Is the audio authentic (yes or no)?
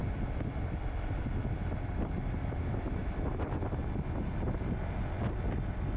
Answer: yes